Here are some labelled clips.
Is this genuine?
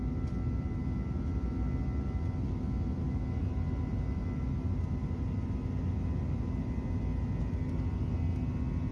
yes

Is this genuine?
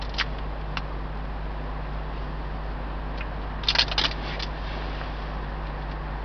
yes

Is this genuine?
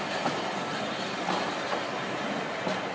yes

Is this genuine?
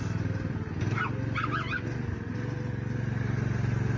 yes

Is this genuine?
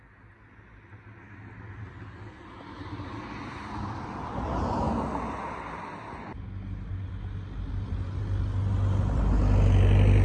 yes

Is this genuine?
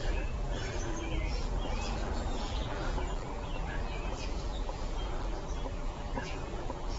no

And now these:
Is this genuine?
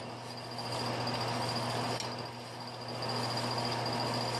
yes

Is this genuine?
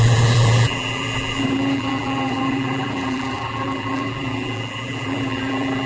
no